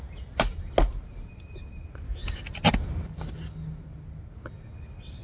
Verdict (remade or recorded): recorded